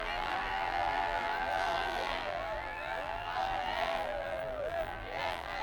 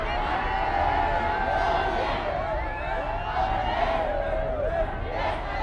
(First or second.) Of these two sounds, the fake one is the first